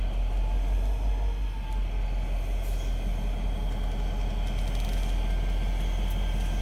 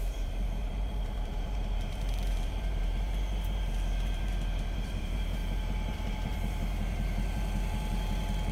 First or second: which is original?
first